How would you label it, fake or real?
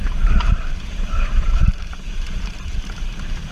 fake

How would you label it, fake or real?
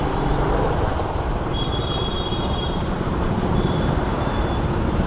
fake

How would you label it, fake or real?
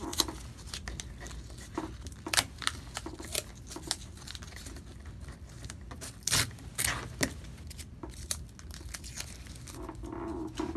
real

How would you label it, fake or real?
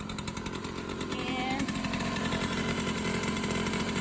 fake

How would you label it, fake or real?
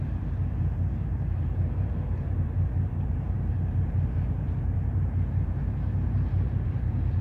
fake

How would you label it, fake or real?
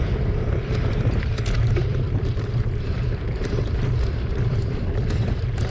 fake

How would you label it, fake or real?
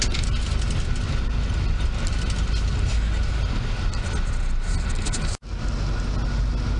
real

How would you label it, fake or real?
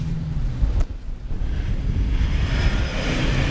real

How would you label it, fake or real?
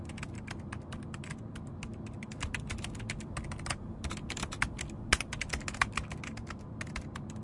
real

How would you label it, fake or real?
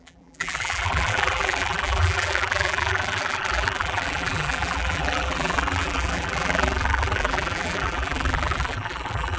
fake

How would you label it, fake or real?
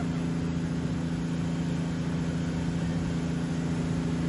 real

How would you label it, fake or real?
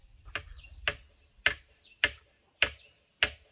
real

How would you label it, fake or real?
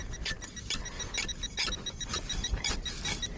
real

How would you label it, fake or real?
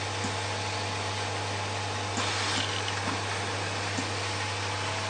real